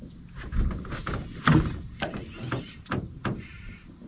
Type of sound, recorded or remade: recorded